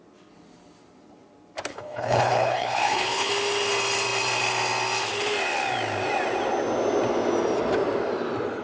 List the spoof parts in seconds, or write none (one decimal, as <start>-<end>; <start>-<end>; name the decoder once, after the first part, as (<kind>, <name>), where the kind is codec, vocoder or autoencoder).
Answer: 1.7-3.3 (codec, HILCodec)